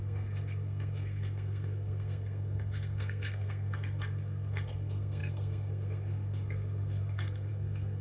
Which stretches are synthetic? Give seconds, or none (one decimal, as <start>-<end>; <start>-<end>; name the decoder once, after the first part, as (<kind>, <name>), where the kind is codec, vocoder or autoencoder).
0.0-8.0 (codec, SNAC)